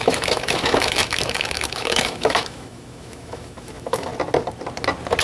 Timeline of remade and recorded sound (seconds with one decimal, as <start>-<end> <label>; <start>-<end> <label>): 0.0-4.1 remade; 4.1-5.2 recorded